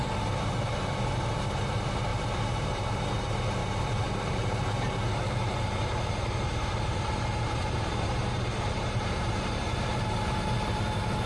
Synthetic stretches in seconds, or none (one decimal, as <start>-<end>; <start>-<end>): 0.0-11.3